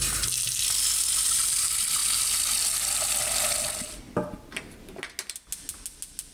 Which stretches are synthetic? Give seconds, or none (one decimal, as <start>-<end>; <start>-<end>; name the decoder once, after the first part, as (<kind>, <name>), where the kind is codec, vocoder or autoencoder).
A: none